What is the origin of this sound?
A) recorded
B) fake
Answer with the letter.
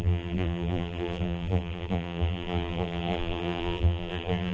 B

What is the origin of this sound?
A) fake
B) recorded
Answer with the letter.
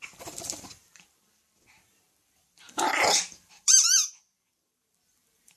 A